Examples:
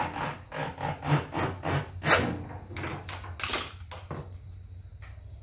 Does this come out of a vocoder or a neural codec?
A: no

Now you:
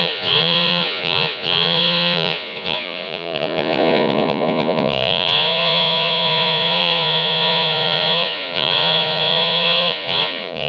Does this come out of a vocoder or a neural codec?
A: yes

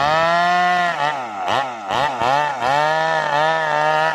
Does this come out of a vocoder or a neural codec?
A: no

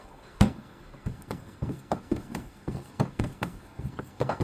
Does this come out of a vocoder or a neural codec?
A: yes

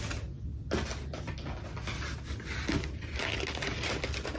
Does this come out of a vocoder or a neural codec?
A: no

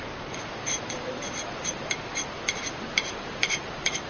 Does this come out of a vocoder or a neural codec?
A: yes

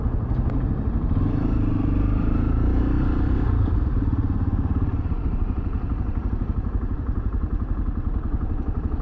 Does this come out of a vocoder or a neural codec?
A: yes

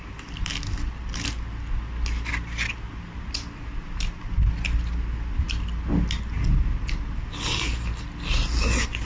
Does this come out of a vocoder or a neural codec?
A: no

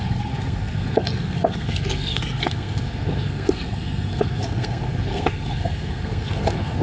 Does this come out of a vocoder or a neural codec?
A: yes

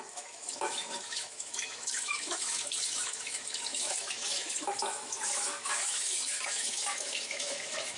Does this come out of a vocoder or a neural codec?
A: yes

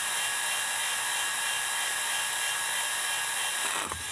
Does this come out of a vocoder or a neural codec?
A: no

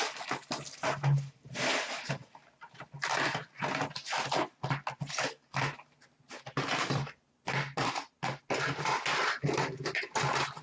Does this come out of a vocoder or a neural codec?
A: no